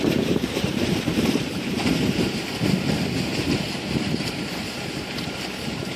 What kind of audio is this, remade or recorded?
remade